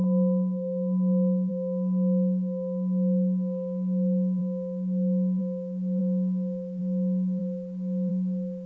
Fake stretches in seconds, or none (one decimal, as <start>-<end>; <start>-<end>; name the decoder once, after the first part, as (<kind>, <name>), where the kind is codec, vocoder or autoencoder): 0.0-1.5 (codec, DAC)